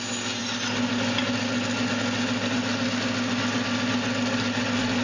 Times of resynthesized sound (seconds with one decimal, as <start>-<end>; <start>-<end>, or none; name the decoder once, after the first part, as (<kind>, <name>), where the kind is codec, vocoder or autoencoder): none